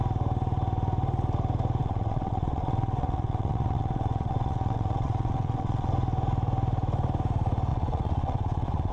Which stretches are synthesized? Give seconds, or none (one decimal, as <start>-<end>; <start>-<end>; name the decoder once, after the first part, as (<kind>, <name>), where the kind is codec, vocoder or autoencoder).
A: 1.8-5.9 (vocoder, WaveNeXt); 7.7-8.9